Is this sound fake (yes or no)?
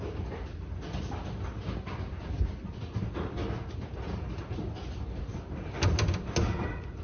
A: no